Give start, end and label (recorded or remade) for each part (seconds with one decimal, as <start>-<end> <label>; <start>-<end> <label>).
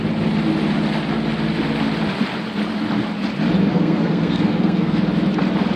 0.0-3.7 recorded; 3.7-5.0 remade; 5.0-5.8 recorded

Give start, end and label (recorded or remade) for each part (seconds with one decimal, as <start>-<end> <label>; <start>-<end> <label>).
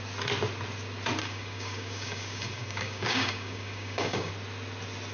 0.0-1.2 recorded; 1.2-4.3 remade; 4.3-5.1 recorded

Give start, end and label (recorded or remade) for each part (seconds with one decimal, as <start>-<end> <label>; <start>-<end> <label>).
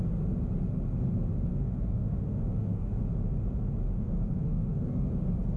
0.0-1.5 recorded; 1.5-3.0 remade; 3.0-3.9 recorded; 3.9-5.1 remade; 5.1-5.6 recorded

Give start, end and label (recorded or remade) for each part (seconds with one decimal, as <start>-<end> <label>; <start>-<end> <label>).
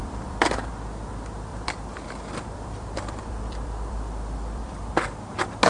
0.0-0.7 remade; 0.7-1.5 recorded; 1.5-4.9 remade; 4.9-5.7 recorded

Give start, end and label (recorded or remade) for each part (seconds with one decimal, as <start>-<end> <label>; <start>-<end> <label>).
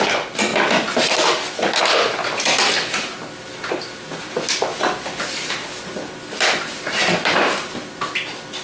0.0-8.6 recorded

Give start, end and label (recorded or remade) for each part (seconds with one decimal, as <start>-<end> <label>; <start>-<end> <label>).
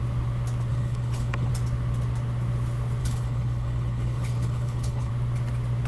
0.0-0.7 recorded; 0.7-1.5 remade; 1.5-3.0 recorded; 3.0-5.1 remade; 5.1-5.9 recorded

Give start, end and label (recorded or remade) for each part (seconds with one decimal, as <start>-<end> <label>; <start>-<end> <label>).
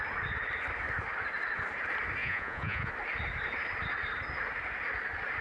0.0-2.2 recorded; 2.2-2.9 remade; 2.9-5.4 recorded